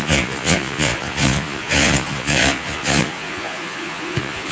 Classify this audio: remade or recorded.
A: remade